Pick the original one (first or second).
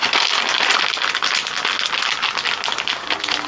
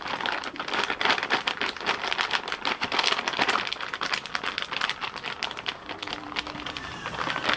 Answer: first